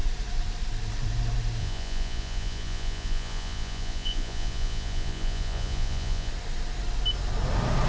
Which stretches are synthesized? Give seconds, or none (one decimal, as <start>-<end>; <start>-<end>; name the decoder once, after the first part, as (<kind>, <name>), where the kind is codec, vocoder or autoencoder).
1.6-6.3 (vocoder, Vocos)